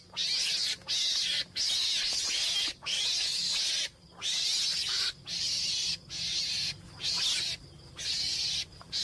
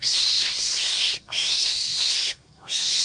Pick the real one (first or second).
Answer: first